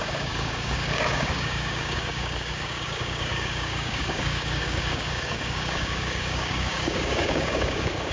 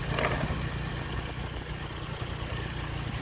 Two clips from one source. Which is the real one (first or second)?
second